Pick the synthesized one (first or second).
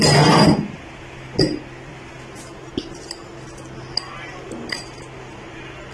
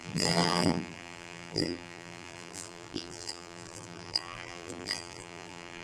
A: second